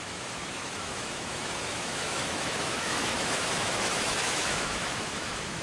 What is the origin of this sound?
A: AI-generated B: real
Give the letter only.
A